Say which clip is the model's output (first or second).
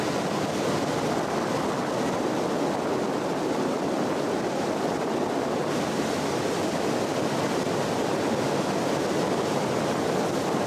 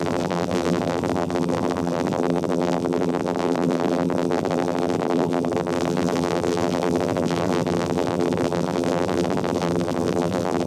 second